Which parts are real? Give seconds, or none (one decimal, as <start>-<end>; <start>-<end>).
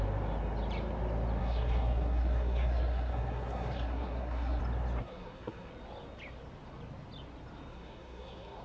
0.0-1.4; 4.6-5.0; 5.7-7.7